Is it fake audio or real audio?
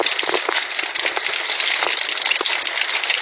real